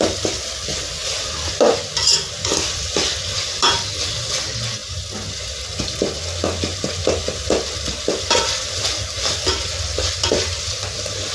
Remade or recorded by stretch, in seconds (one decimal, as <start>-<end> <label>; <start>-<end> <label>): 0.0-1.0 remade; 1.0-2.5 recorded; 2.5-4.8 remade; 4.8-7.7 recorded; 7.7-11.3 remade